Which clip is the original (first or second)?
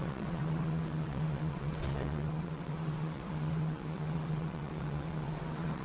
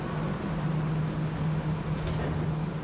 second